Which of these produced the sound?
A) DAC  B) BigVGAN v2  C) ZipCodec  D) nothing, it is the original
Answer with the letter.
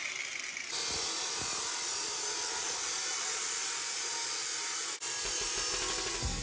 D